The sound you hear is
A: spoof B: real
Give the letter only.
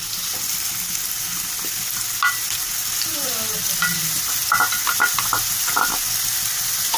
B